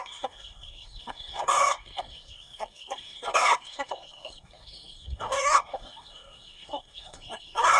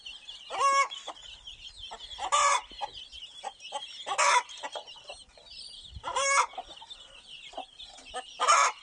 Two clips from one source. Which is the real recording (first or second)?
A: second